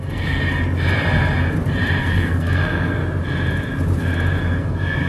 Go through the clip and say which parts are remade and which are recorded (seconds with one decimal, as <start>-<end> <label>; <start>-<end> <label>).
0.0-0.4 remade; 0.4-2.0 recorded; 2.0-3.0 remade; 3.0-4.4 recorded; 4.4-5.1 remade